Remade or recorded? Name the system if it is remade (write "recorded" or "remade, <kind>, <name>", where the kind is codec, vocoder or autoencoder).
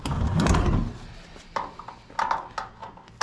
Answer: recorded